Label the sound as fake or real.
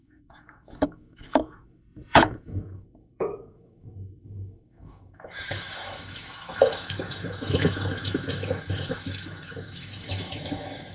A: fake